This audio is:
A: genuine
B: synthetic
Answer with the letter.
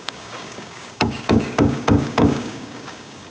B